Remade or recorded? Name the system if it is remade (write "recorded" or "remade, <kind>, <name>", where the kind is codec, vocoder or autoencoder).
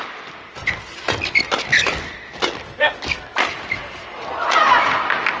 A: recorded